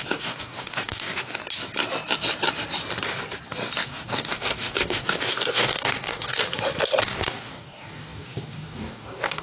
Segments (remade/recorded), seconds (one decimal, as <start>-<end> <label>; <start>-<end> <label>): 0.0-1.4 remade; 1.4-3.8 recorded; 3.8-6.4 remade; 6.4-7.0 recorded; 7.0-9.4 remade